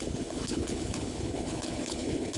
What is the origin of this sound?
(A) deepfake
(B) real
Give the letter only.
A